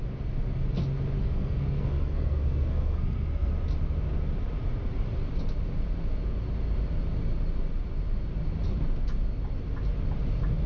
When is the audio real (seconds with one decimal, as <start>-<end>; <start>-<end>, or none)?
0.0-1.2; 3.5-10.7